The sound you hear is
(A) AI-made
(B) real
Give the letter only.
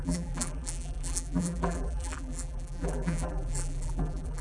A